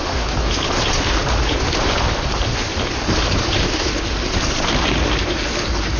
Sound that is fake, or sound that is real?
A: real